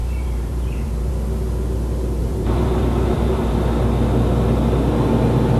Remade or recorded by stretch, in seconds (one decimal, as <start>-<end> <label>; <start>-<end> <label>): 0.0-1.1 remade; 1.1-2.2 recorded; 2.2-3.6 remade; 3.6-5.6 recorded